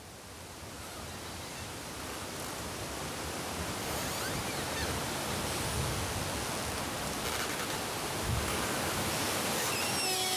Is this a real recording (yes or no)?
yes